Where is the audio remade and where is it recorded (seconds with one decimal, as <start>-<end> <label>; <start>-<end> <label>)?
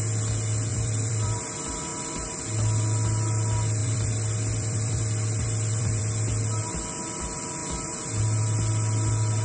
0.0-0.7 recorded; 0.7-1.4 remade; 1.4-1.9 recorded; 1.9-2.4 remade; 2.4-3.8 recorded; 3.8-6.0 remade; 6.0-9.4 recorded